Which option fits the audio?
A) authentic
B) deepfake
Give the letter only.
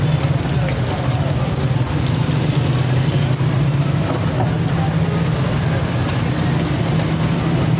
A